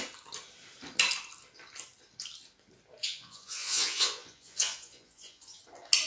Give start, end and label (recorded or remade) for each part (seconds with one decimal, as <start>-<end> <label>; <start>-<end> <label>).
0.0-3.0 recorded; 3.0-5.6 remade; 5.6-6.1 recorded